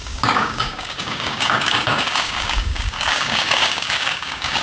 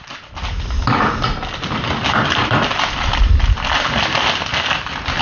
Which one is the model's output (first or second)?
first